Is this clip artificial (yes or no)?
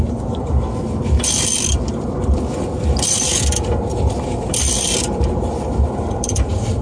yes